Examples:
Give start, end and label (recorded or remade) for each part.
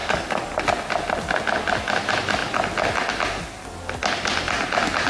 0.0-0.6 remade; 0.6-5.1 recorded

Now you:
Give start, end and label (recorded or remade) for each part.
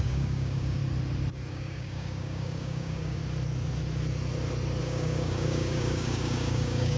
0.0-0.8 remade; 0.8-1.5 recorded; 1.5-3.2 remade; 3.2-4.8 recorded; 4.8-7.0 remade